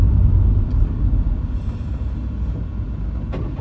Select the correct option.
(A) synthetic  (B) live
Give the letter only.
B